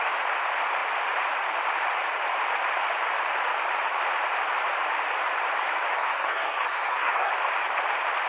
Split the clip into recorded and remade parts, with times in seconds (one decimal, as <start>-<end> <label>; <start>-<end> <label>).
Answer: 0.0-5.9 recorded; 5.9-7.3 remade; 7.3-8.3 recorded